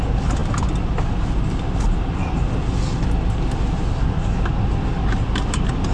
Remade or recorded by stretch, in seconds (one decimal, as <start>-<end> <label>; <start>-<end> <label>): 0.0-5.9 recorded